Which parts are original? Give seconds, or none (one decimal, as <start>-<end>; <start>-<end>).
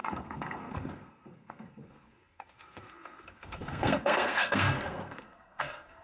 none